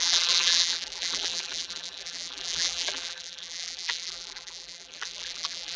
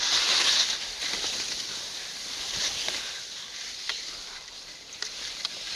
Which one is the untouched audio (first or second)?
second